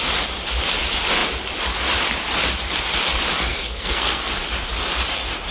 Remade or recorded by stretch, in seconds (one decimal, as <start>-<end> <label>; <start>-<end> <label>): 0.0-3.5 recorded; 3.5-4.3 remade; 4.3-5.5 recorded